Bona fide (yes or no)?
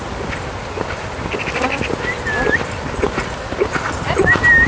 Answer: yes